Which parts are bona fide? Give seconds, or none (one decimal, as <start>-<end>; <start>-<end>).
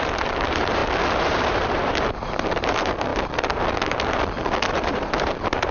0.8-1.3; 3.1-4.7